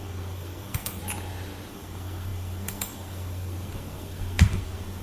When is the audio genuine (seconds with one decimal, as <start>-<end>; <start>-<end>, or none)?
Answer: 1.0-1.7